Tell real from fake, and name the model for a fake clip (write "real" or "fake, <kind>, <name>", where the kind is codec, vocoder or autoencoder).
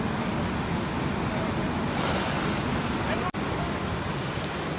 real